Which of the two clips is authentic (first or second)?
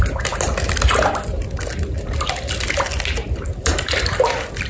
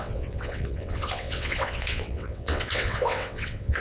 first